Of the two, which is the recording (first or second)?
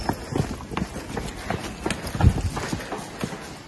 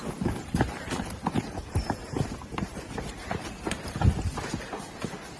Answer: first